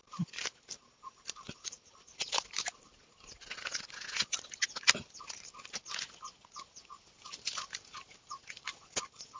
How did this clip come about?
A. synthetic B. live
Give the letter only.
B